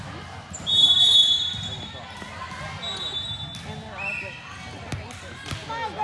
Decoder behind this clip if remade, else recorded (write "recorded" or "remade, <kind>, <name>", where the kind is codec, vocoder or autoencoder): recorded